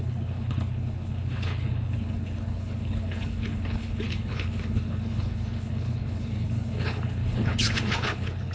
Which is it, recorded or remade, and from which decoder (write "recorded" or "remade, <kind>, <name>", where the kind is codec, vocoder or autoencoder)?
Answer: remade, codec, HILCodec